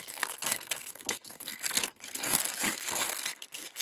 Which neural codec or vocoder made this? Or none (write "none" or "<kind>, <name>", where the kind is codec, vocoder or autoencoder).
codec, SNAC